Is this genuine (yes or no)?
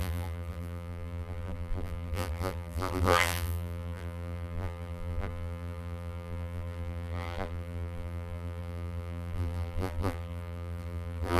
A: no